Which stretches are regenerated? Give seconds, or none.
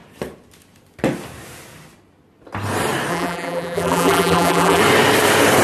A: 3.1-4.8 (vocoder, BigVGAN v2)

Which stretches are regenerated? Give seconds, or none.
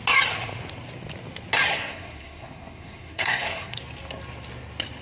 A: 1.7-3.8 (codec, SNAC)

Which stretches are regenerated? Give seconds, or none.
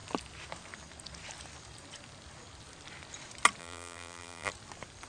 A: 3.6-4.5 (vocoder, BigVGAN v2)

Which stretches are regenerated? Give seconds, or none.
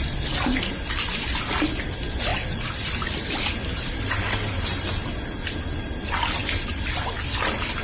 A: none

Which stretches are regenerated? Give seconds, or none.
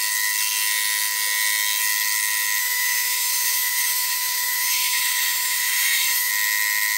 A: 2.6-6.3 (autoencoder, DAC-VAE)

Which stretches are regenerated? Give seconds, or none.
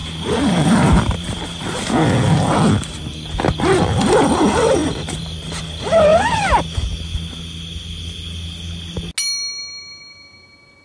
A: 0.0-1.8 (vocoder, BigVGAN v2); 4.8-5.6